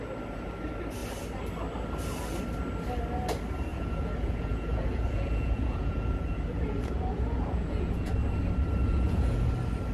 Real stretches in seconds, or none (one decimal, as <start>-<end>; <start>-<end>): 0.0-3.7; 8.1-8.8; 9.5-9.9